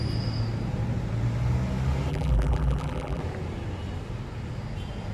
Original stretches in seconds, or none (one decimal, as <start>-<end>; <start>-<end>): 0.0-2.1; 3.2-5.1